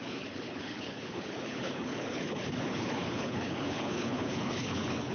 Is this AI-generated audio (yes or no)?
yes